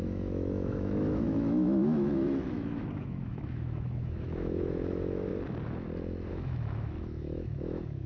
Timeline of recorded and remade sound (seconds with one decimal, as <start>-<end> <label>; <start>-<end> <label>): 0.0-5.3 remade; 5.3-6.3 recorded; 6.3-8.1 remade